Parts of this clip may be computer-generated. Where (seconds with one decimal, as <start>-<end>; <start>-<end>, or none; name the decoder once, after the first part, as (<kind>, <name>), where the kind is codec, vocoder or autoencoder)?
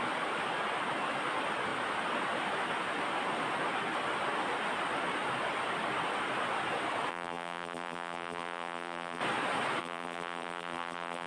7.1-9.2 (vocoder, BigVGAN v2); 9.8-11.3